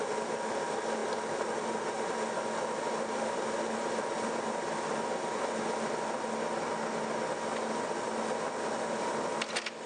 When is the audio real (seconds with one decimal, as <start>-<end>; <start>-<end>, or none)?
0.0-9.9